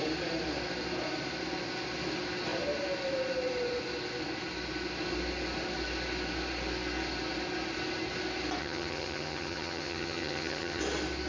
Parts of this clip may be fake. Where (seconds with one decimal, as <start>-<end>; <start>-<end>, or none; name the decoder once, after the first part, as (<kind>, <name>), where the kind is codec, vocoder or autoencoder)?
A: 8.6-10.8 (vocoder, HiFi-GAN)